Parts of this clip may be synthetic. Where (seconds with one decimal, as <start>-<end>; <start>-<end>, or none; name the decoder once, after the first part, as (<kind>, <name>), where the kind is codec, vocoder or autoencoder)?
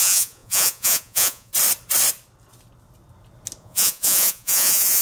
0.0-1.5 (vocoder, Vocos); 3.6-5.0